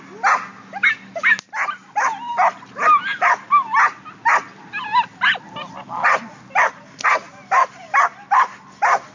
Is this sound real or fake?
real